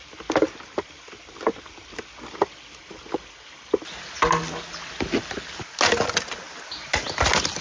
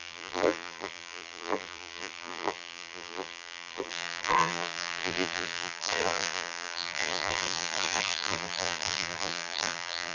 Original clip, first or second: first